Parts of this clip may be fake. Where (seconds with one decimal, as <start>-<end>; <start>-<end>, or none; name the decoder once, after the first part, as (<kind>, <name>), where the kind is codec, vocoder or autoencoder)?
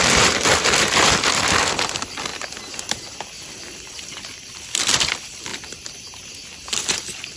0.0-2.3 (vocoder, BigVGAN v2); 3.4-5.5; 6.7-7.4